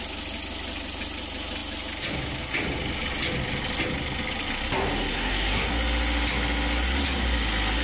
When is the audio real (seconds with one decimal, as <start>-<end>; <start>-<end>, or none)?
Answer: 0.0-5.1; 5.7-7.8